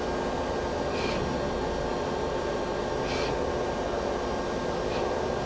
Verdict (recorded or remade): recorded